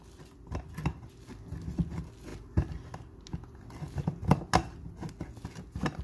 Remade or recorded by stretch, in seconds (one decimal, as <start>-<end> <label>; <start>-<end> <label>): 0.0-6.0 recorded